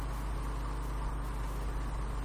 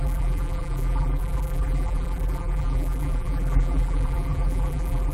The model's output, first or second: second